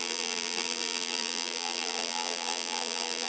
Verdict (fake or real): fake